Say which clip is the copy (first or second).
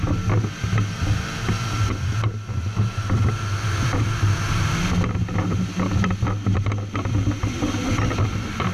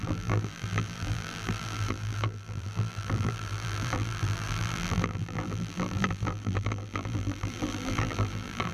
second